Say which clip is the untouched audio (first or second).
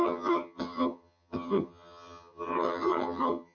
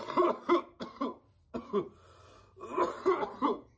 second